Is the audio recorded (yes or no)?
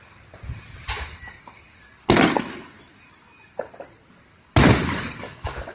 yes